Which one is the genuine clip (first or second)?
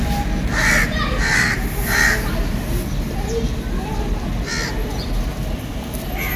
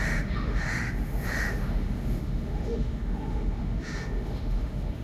first